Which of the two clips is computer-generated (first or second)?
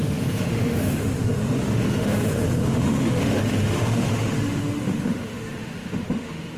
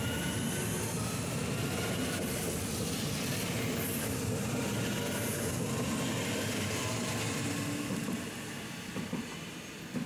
first